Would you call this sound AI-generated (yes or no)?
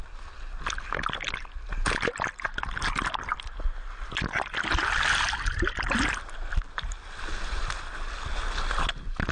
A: no